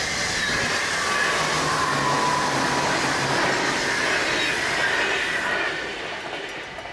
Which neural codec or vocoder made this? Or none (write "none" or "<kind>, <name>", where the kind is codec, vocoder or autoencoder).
none